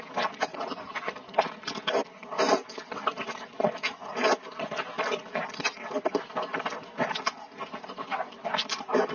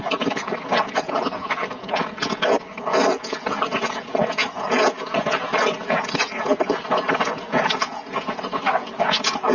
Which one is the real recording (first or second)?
first